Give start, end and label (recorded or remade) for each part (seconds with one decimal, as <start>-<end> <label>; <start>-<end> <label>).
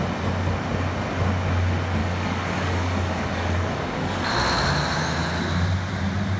0.0-2.0 recorded; 2.0-4.3 remade; 4.3-6.4 recorded